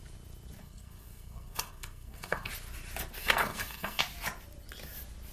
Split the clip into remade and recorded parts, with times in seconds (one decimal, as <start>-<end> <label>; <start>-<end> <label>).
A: 0.0-0.6 recorded; 0.6-2.5 remade; 2.5-3.2 recorded; 3.2-4.0 remade; 4.0-5.3 recorded